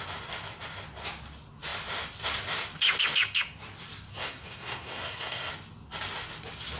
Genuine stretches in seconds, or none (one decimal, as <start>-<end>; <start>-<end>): 0.0-4.1; 5.5-6.8